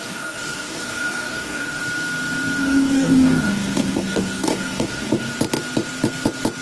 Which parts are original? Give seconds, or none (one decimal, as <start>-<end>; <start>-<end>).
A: 1.8-2.6; 5.3-6.6